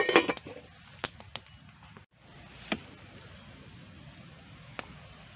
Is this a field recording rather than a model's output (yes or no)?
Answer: yes